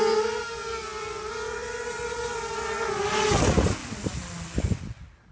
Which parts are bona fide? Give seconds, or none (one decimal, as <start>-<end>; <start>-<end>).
0.0-0.8; 3.0-3.8; 4.6-5.3